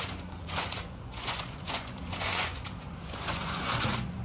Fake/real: fake